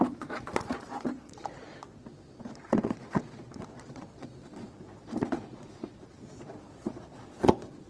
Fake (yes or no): yes